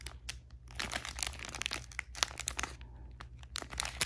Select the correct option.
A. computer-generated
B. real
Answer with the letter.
B